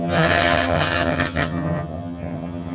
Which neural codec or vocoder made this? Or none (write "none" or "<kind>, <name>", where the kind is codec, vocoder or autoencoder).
vocoder, HiFi-GAN